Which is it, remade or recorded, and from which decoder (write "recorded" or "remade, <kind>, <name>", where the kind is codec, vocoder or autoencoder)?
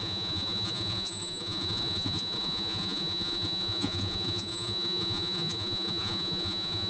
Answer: remade, vocoder, Vocos